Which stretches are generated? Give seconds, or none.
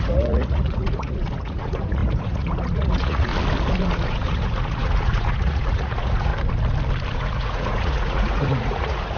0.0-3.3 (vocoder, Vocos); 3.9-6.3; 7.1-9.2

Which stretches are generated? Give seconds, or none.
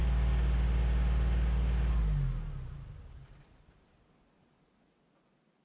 none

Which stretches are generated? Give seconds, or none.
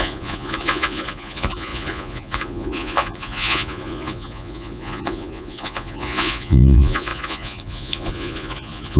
0.0-9.0 (vocoder, Vocos)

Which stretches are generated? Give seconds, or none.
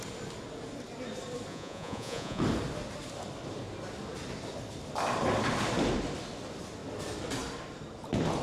1.5-2.4 (vocoder, Vocos)